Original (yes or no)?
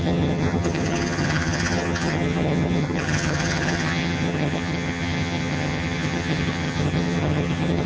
no